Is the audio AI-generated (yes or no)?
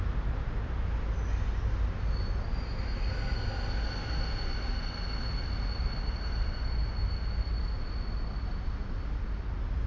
no